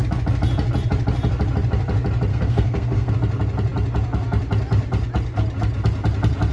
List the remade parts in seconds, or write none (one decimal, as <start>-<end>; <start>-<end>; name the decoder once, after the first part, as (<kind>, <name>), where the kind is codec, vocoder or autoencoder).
2.3-3.1 (codec, SNAC)